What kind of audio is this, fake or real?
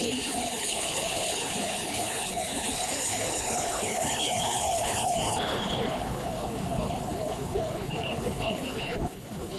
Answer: fake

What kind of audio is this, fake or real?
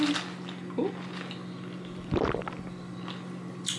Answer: real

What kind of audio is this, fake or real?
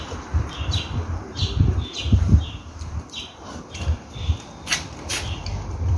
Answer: fake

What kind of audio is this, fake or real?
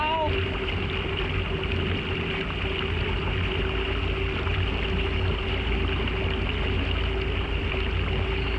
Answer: real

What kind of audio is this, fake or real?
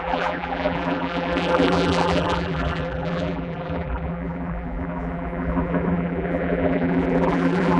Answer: fake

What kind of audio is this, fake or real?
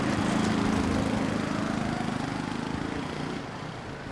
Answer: real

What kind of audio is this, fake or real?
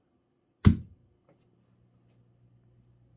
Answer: real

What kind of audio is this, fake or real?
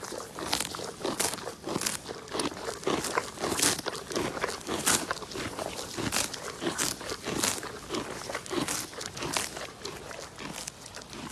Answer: real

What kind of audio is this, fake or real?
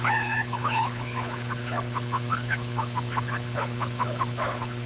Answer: fake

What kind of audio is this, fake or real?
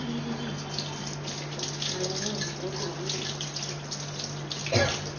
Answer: real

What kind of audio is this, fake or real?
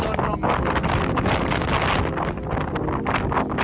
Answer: real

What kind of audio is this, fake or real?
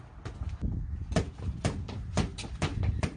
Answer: real